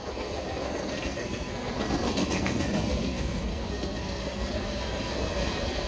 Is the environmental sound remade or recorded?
remade